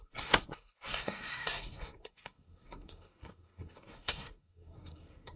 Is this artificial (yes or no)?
yes